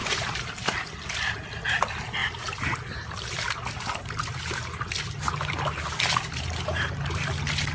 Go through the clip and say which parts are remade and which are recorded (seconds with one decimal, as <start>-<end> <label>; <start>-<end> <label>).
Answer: 0.0-0.5 remade; 0.5-7.7 recorded